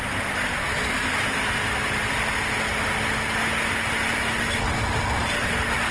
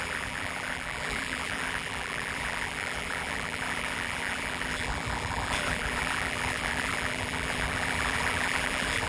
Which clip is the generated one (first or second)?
second